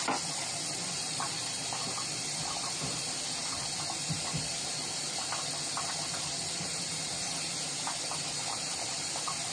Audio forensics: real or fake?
real